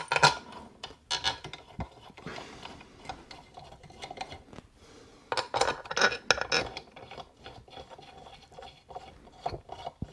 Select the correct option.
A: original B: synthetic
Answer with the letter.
A